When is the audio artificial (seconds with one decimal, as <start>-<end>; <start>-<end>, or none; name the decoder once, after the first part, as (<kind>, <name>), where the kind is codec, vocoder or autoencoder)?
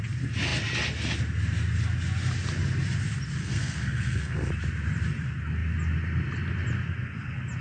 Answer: 3.4-4.5 (codec, SNAC)